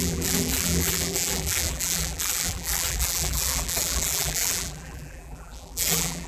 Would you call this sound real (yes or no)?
no